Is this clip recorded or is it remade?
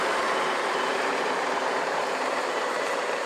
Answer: remade